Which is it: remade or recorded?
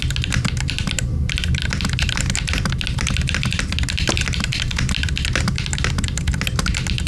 recorded